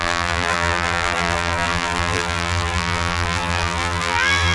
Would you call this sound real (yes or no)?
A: no